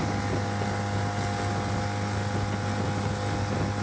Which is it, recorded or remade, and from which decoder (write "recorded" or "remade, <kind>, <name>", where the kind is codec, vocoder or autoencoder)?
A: recorded